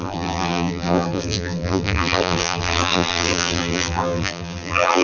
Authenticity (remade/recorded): remade